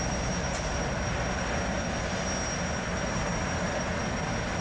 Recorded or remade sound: recorded